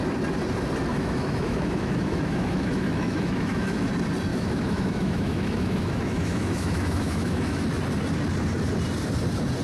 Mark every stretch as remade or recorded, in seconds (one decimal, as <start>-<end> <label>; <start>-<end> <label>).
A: 0.0-0.9 recorded; 0.9-3.9 remade; 3.9-4.3 recorded; 4.3-7.6 remade; 7.6-9.6 recorded

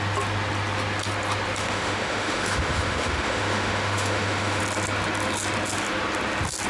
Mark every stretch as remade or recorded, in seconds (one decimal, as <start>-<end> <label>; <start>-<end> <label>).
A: 0.0-1.6 recorded; 1.6-4.6 remade; 4.6-6.7 recorded

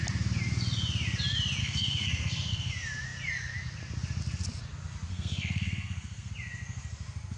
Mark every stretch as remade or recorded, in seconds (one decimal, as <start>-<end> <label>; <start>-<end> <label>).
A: 0.0-1.6 recorded; 1.6-2.7 remade; 2.7-5.1 recorded; 5.1-6.3 remade; 6.3-7.4 recorded

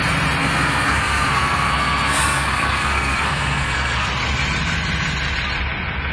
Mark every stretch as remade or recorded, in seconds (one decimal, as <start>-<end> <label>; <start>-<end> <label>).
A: 0.0-0.4 recorded; 0.4-4.1 remade; 4.1-6.1 recorded

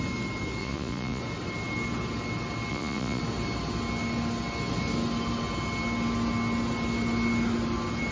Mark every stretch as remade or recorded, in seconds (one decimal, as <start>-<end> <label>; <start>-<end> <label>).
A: 0.0-0.6 recorded; 0.6-1.2 remade; 1.2-2.7 recorded; 2.7-3.2 remade; 3.2-8.1 recorded